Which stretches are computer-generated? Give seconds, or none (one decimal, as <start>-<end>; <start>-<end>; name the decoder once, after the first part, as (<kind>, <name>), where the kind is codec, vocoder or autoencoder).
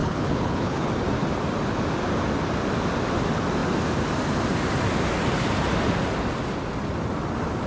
0.0-0.9 (codec, HILCodec)